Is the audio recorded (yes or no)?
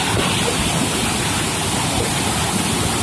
yes